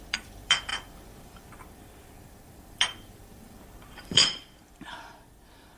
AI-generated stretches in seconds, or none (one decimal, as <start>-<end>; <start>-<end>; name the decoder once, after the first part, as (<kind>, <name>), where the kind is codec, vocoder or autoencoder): 0.0-5.8 (vocoder, BigVGAN v2)